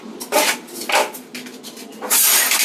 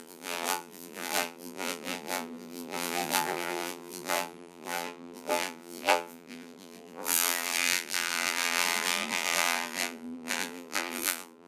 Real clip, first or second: first